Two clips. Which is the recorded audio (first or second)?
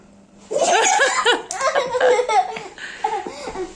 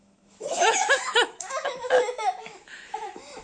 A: first